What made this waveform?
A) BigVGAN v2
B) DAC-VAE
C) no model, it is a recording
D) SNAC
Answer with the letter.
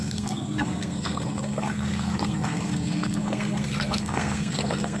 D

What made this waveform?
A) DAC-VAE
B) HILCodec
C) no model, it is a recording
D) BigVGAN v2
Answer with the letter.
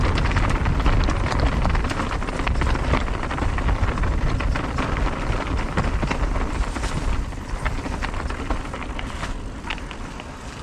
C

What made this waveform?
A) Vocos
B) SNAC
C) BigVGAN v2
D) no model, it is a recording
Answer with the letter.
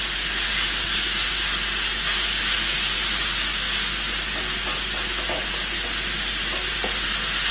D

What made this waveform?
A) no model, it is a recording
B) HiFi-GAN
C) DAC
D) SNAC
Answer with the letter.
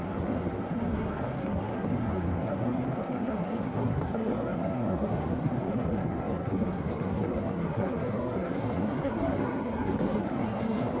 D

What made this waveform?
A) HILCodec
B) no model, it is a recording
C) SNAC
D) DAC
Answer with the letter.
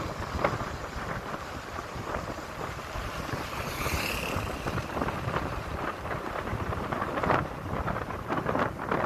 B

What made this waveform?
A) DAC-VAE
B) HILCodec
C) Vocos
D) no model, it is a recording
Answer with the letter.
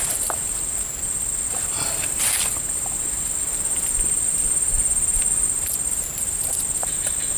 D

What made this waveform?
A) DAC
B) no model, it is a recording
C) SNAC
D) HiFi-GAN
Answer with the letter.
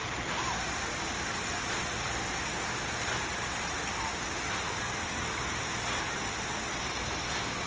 B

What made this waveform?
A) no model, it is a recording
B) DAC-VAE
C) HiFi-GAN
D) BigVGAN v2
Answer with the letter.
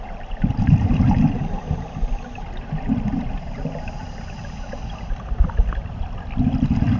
A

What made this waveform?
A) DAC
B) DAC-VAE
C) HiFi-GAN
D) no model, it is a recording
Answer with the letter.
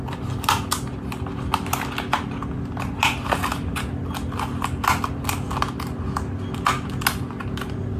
D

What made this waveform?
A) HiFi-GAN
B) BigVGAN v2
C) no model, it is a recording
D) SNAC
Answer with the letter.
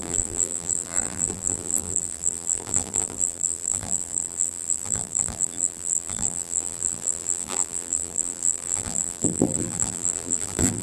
B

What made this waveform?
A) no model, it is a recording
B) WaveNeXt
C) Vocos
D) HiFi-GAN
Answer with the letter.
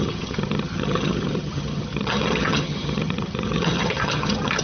D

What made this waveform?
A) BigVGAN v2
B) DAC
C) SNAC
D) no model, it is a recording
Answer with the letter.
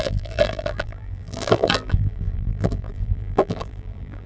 A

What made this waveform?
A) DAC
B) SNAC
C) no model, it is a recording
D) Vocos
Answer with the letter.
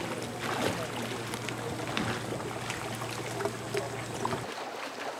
C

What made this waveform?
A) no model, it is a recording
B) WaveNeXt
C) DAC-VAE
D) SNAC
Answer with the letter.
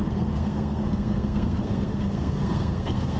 D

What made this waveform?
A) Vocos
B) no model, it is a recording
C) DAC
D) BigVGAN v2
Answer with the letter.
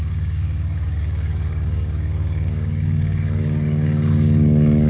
C